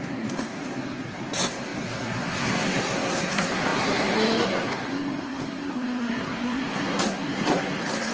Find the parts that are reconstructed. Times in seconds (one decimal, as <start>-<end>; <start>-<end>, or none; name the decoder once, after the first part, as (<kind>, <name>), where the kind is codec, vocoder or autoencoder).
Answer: 0.0-8.1 (codec, SNAC)